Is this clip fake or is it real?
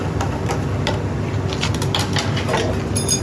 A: real